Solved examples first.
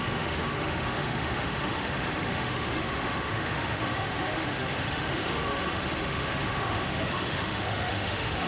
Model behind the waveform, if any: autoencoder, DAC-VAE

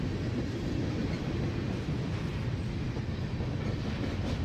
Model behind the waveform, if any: none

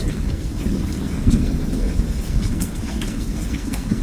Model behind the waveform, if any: codec, SNAC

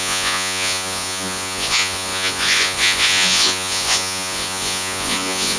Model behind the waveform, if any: vocoder, Vocos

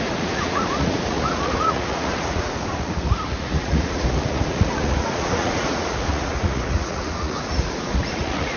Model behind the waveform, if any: vocoder, Vocos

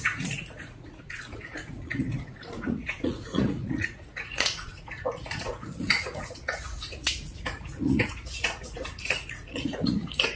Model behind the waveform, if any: vocoder, Vocos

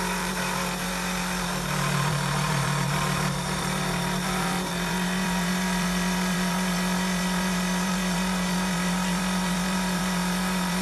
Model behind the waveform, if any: vocoder, BigVGAN v2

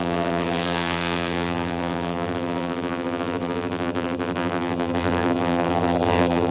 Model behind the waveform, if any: vocoder, BigVGAN v2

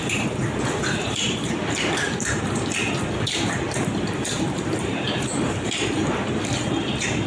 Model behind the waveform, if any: vocoder, BigVGAN v2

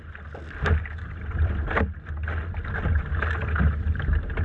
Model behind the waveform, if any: none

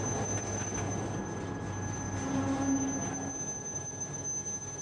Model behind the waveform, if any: none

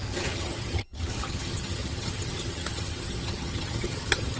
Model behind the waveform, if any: vocoder, HiFi-GAN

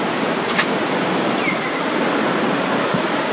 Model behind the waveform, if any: vocoder, BigVGAN v2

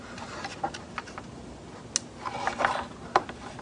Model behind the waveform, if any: none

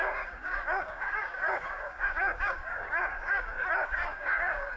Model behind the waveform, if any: codec, DAC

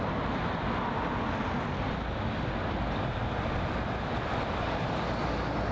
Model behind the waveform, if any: none